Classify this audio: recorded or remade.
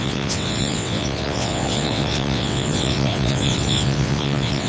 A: remade